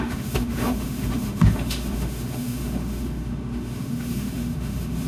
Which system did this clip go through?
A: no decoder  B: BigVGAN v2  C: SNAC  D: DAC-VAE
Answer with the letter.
D